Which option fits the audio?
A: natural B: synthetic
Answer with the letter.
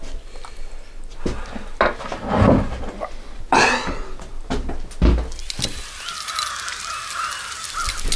A